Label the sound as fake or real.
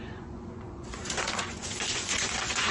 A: fake